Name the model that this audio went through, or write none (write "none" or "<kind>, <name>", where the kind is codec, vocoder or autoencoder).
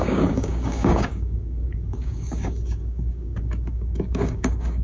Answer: codec, DAC